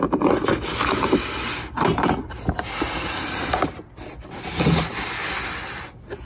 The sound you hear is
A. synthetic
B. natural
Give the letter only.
B